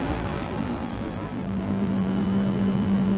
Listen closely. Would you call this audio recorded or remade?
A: remade